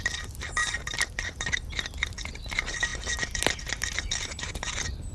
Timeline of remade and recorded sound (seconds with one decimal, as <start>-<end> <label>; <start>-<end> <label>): 0.0-0.6 remade; 0.6-2.3 recorded; 2.3-5.1 remade